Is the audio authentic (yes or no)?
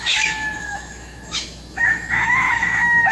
no